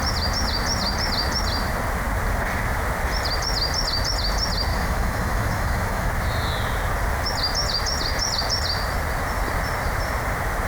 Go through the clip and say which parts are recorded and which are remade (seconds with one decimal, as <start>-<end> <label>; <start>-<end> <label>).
0.0-4.7 recorded; 4.7-6.1 remade; 6.1-10.7 recorded